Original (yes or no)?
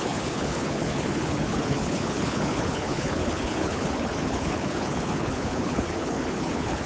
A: no